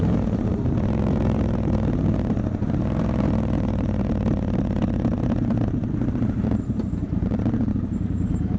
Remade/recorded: remade